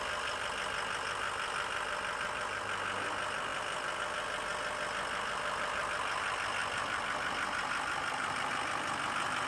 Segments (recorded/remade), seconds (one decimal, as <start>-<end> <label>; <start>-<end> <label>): 0.0-6.6 recorded; 6.6-8.5 remade; 8.5-9.5 recorded